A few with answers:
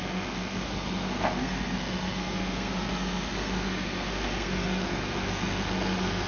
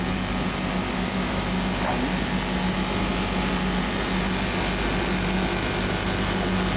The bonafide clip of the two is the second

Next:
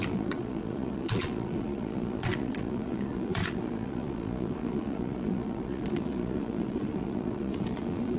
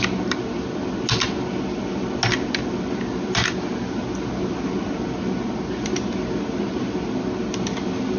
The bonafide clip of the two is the second